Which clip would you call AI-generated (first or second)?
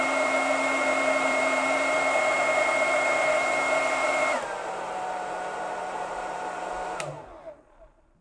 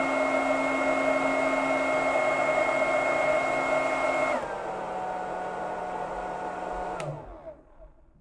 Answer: first